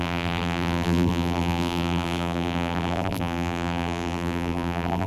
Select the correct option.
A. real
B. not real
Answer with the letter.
B